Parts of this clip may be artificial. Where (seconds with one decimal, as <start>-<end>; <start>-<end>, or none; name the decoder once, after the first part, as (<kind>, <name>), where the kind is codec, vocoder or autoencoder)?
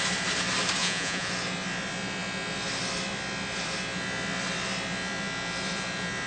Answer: 0.8-1.3 (vocoder, Vocos)